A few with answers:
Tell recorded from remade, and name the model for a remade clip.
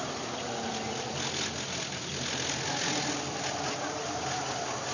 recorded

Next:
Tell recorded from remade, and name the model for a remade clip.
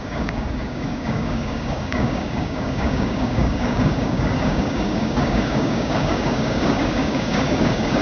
remade, codec, DAC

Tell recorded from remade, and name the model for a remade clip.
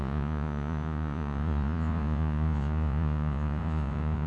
remade, vocoder, Vocos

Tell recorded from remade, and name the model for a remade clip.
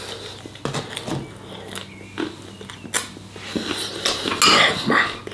recorded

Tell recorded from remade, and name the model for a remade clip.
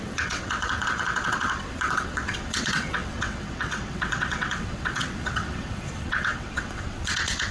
remade, vocoder, WaveNeXt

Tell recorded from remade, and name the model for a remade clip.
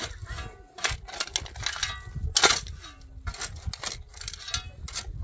recorded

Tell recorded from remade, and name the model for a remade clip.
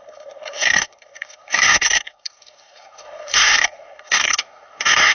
remade, codec, SNAC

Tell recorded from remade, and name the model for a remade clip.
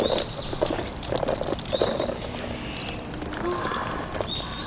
recorded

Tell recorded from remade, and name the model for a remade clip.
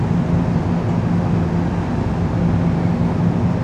recorded